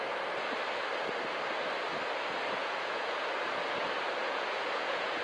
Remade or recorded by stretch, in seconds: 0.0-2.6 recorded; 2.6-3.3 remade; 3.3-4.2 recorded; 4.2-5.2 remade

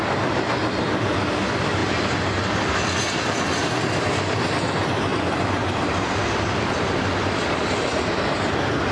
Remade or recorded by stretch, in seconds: 0.0-8.9 recorded